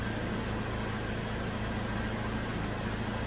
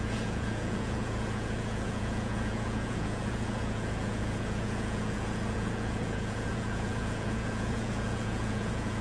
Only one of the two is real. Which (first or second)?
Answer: first